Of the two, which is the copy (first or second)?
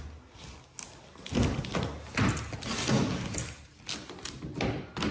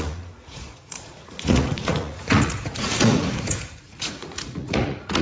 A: second